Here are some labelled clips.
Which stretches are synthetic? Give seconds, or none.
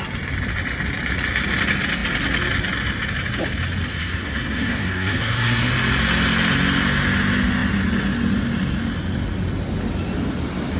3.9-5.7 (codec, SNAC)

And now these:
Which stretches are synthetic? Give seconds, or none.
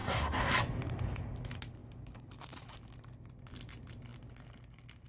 0.0-0.5 (codec, SNAC)